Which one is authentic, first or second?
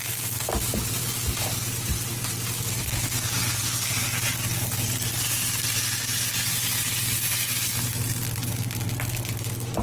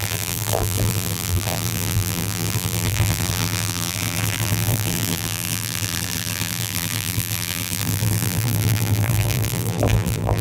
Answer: first